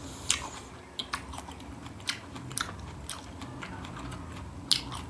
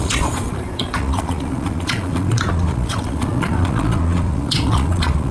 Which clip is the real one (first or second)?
first